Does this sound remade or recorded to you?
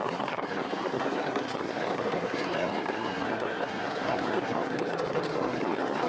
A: remade